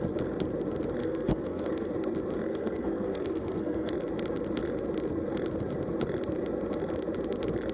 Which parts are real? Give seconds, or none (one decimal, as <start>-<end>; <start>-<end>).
0.0-1.0; 1.9-2.5; 3.9-7.7